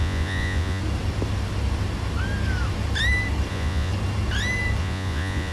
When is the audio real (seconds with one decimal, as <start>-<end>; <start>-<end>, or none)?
0.8-3.5; 3.9-4.8